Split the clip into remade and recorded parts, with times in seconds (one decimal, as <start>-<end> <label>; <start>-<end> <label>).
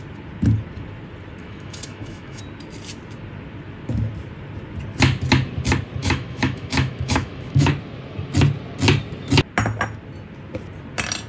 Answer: 0.0-1.4 recorded; 1.4-2.4 remade; 2.4-6.0 recorded; 6.0-7.7 remade; 7.7-11.3 recorded